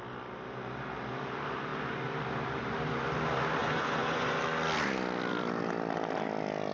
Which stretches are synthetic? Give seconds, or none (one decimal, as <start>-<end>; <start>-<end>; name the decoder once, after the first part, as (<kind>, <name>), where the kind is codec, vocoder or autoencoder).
3.6-4.4 (vocoder, Vocos)

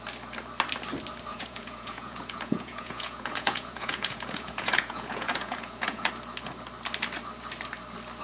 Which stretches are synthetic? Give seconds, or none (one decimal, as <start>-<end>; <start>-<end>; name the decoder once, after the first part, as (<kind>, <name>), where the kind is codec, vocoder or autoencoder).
1.3-6.1 (vocoder, Vocos)

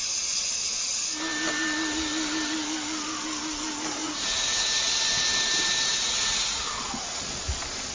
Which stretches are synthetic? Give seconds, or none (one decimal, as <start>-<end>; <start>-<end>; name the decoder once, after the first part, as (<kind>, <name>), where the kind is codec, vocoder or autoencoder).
4.0-4.9 (vocoder, Vocos); 5.9-6.6

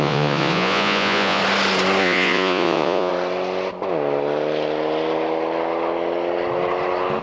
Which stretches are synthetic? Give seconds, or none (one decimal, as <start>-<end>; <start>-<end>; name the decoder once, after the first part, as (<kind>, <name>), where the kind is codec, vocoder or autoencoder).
0.0-1.4 (vocoder, Vocos); 2.0-3.1

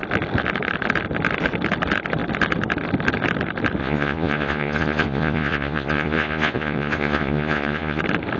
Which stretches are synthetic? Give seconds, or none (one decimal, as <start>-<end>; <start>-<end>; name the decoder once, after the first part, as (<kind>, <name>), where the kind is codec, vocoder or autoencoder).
3.8-8.0 (vocoder, Vocos)

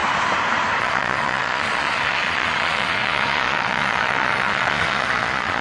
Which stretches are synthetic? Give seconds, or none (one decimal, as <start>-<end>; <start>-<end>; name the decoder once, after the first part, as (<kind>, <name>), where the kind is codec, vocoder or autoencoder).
0.8-5.6 (vocoder, Vocos)

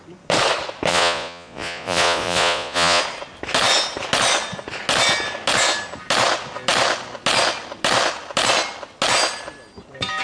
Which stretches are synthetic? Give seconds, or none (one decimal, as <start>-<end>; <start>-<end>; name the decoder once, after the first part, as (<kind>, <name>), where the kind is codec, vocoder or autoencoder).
0.9-3.0 (vocoder, Vocos)